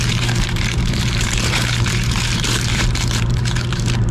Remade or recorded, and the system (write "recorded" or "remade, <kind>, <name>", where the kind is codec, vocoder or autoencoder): remade, vocoder, BigVGAN v2